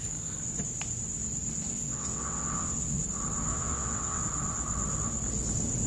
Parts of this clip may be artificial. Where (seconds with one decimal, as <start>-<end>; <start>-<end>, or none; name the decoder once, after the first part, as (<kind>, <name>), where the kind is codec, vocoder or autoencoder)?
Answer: 1.7-3.0 (vocoder, WaveNeXt); 3.5-4.2